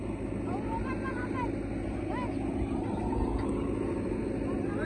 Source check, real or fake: real